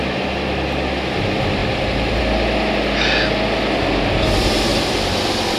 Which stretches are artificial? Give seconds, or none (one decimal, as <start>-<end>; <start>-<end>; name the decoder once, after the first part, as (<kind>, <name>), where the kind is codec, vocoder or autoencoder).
1.6-2.2 (vocoder, BigVGAN v2); 4.7-5.6